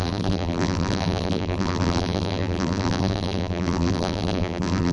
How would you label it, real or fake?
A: fake